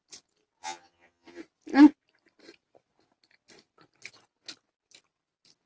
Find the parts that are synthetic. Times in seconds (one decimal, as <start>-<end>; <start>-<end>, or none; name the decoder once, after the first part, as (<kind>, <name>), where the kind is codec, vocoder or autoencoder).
0.6-1.4 (vocoder, HiFi-GAN)